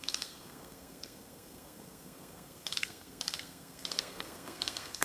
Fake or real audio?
fake